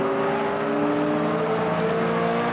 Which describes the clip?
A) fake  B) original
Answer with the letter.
B